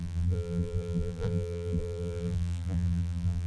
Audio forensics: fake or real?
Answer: fake